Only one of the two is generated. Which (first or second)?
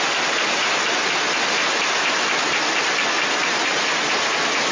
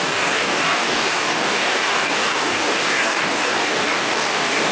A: second